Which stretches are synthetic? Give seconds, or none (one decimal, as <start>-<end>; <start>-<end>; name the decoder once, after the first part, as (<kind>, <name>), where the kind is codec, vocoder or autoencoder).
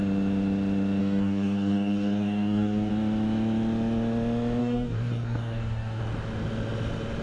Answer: 1.0-2.9 (codec, DAC); 4.6-6.0